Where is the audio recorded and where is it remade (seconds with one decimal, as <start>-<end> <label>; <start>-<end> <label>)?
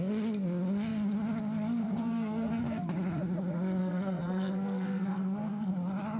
0.0-1.8 recorded; 1.8-2.6 remade; 2.6-3.8 recorded; 3.8-5.7 remade; 5.7-6.2 recorded